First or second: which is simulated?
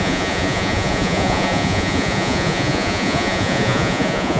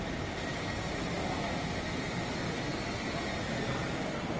first